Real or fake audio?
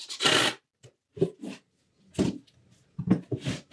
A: real